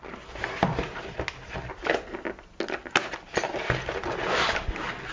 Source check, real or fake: real